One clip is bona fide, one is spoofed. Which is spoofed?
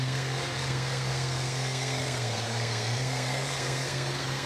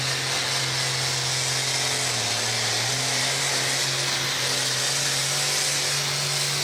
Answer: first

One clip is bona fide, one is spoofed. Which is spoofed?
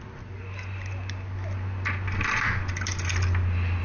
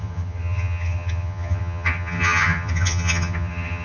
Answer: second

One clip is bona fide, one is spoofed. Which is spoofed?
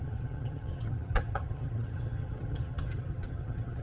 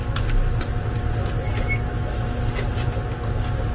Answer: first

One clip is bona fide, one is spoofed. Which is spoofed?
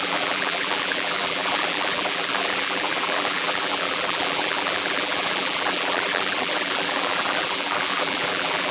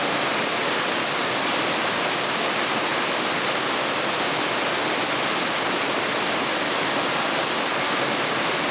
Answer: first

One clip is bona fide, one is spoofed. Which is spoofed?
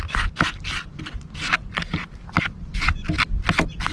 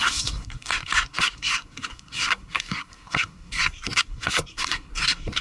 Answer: second